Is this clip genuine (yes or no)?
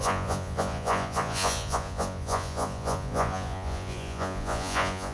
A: no